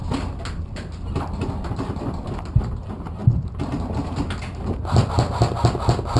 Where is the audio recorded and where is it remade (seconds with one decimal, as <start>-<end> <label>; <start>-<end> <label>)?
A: 0.0-6.2 recorded